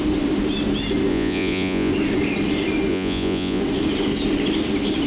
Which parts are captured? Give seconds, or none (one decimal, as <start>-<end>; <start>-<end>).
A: 0.0-1.1; 1.9-2.9; 3.6-5.1